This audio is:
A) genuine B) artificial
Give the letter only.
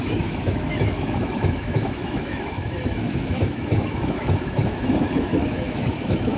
B